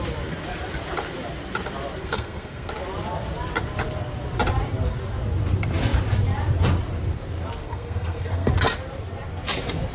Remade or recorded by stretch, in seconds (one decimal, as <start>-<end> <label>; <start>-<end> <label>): 0.0-2.0 recorded; 2.0-2.7 remade; 2.7-7.6 recorded; 7.6-8.5 remade; 8.5-9.9 recorded